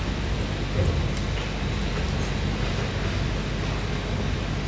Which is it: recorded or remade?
recorded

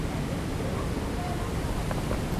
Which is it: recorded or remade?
recorded